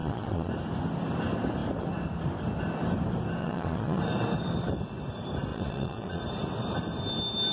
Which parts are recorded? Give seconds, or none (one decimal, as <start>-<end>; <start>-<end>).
0.5-3.4; 4.0-5.5; 6.2-7.5